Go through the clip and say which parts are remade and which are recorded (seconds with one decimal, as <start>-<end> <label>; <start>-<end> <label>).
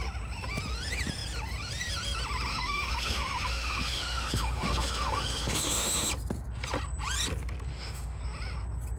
0.0-2.5 recorded; 2.5-6.1 remade; 6.1-7.7 recorded; 7.7-8.2 remade; 8.2-9.0 recorded